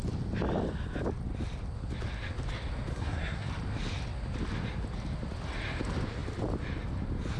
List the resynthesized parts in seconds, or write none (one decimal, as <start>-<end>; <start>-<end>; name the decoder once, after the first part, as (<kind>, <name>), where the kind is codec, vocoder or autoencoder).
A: 2.9-3.5 (codec, SNAC)